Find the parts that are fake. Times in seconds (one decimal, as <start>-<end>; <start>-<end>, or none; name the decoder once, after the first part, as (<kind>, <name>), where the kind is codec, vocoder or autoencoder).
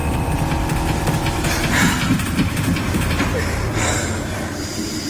none